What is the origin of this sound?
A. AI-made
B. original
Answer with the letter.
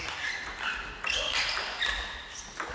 B